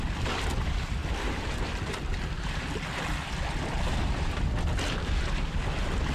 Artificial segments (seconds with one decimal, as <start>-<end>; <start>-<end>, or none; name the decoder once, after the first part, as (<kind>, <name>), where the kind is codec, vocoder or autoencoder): none